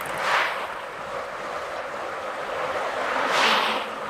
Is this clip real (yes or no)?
yes